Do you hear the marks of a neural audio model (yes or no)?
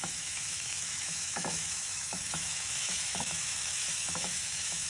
yes